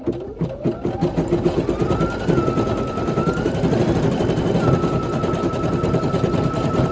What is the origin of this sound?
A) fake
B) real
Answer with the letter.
B